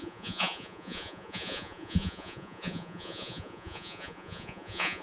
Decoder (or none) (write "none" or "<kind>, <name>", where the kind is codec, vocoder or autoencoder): vocoder, Vocos